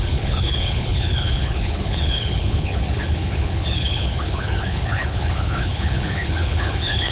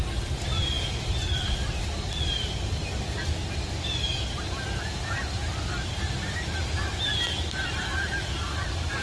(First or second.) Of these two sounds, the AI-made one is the first